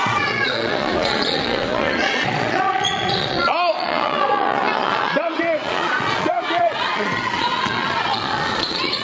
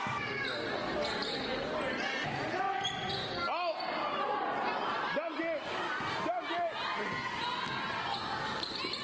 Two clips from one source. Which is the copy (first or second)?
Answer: first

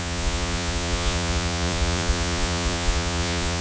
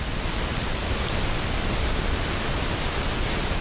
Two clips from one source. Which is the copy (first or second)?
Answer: first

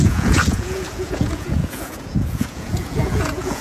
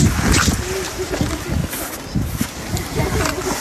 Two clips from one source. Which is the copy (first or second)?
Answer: first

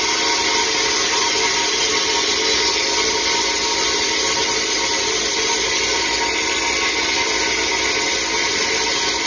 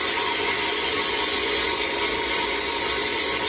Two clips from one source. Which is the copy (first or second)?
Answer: second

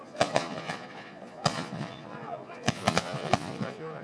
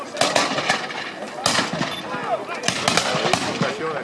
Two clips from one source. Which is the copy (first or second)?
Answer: first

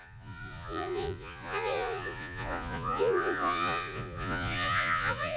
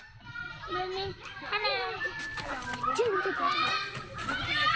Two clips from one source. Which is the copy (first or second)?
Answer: first